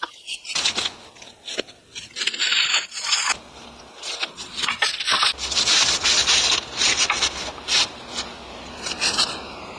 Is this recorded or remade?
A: recorded